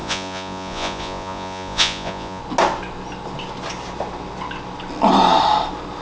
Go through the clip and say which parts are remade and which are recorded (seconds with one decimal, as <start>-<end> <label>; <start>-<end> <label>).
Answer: 0.0-2.4 remade; 2.4-6.0 recorded